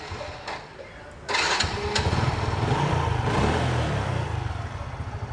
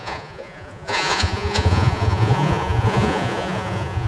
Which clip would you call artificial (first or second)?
second